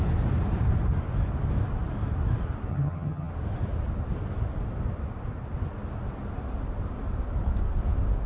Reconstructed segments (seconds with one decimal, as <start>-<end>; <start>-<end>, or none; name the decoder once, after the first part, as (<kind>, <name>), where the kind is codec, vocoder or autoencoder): 2.7-3.3 (vocoder, HiFi-GAN)